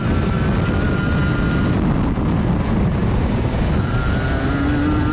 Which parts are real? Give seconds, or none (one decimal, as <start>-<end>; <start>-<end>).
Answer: 0.0-3.0; 3.7-5.1